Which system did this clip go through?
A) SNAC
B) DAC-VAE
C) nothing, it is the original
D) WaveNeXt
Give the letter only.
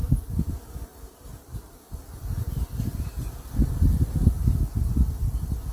C